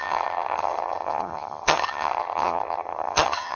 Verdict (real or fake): fake